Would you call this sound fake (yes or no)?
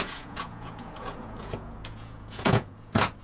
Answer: yes